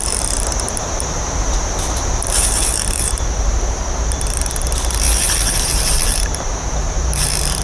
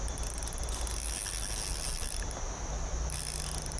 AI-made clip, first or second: first